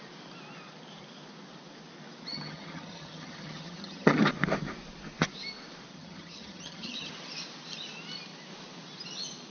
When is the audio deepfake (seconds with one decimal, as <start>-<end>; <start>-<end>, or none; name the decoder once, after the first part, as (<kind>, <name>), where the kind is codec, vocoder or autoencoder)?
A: 2.3-4.2 (vocoder, HiFi-GAN); 5.9-7.1